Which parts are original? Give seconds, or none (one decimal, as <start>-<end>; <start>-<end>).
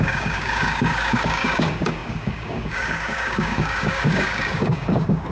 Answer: none